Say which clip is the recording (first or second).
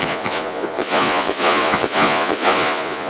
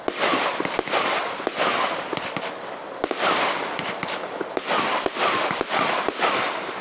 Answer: second